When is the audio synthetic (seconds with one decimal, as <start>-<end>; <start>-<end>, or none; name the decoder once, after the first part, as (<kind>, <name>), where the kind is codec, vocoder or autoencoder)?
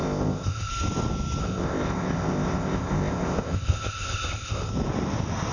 0.0-0.7 (codec, ZipCodec); 1.4-4.7